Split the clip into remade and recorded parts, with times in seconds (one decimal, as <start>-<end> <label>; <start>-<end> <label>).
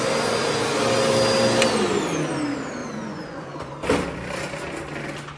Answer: 0.0-2.8 recorded; 2.8-3.7 remade; 3.7-5.4 recorded